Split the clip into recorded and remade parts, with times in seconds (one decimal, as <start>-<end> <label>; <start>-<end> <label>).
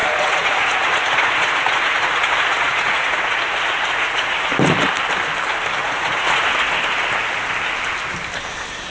0.0-4.5 remade; 4.5-5.8 recorded; 5.8-6.4 remade; 6.4-8.9 recorded